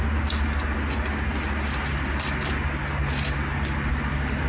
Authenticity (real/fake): real